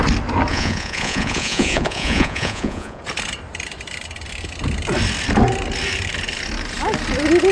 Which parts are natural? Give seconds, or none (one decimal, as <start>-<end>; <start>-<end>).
0.0-0.5; 3.0-7.5